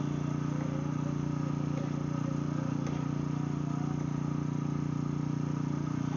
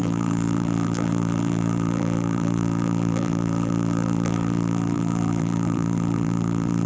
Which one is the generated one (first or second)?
second